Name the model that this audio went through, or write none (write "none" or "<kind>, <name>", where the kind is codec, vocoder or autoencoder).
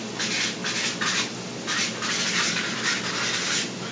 none